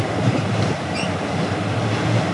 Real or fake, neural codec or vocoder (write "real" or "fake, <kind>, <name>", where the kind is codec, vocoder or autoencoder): real